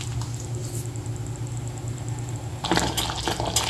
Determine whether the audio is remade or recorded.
recorded